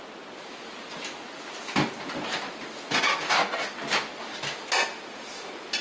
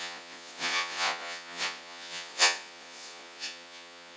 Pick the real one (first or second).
first